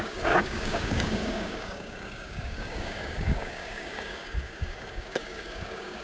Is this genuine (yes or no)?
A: no